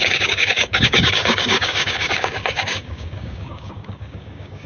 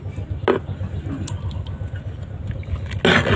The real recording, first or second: second